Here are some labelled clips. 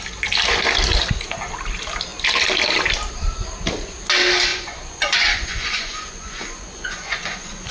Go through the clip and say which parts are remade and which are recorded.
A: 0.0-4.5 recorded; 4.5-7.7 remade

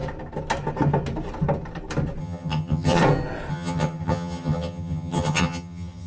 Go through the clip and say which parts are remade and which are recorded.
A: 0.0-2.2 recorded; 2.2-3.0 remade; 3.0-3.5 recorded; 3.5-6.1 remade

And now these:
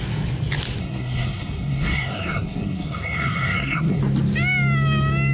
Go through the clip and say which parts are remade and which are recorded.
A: 0.0-0.8 recorded; 0.8-4.0 remade; 4.0-5.3 recorded

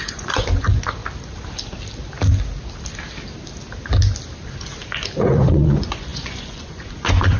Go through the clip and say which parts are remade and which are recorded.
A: 0.0-1.0 remade; 1.0-5.2 recorded; 5.2-7.4 remade

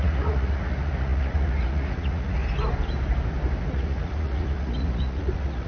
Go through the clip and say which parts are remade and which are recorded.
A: 0.0-2.4 remade; 2.4-3.6 recorded; 3.6-5.7 remade